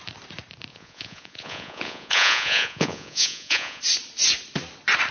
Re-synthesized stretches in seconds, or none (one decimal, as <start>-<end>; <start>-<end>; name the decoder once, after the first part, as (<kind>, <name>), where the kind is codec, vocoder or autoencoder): 0.7-3.8 (vocoder, Vocos)